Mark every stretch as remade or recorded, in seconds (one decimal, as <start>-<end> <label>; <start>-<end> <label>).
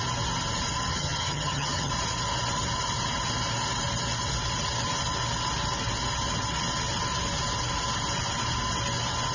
0.0-0.9 recorded; 0.9-1.9 remade; 1.9-9.3 recorded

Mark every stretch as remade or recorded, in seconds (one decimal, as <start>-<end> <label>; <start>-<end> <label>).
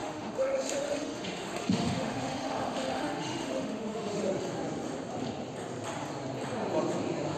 0.0-4.3 remade; 4.3-7.4 recorded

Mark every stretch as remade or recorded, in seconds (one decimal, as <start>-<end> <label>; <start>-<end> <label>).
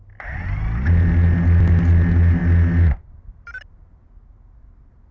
0.0-5.1 recorded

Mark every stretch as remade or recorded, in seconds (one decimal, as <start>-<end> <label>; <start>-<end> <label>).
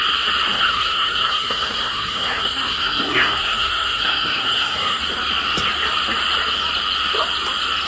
0.0-0.6 recorded; 0.6-5.0 remade; 5.0-7.9 recorded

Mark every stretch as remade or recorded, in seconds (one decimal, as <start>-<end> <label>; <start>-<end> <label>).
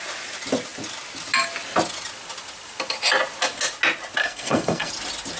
0.0-4.2 recorded; 4.2-4.9 remade; 4.9-5.4 recorded